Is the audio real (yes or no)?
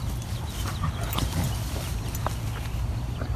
yes